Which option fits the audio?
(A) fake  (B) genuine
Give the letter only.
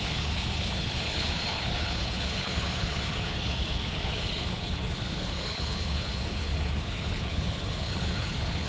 A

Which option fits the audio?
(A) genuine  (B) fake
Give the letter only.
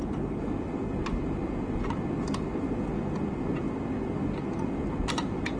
A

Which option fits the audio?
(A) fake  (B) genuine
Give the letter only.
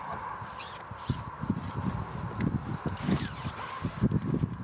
B